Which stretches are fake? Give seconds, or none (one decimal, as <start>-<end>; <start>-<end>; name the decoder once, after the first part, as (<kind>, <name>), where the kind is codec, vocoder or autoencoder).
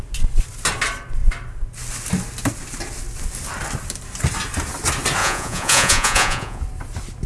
5.2-6.6 (vocoder, Vocos)